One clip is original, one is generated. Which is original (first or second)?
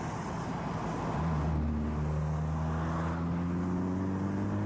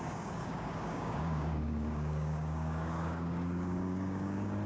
first